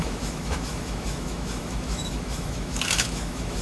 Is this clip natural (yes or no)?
no